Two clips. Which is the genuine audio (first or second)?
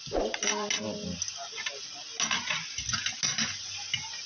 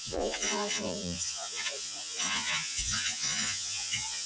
first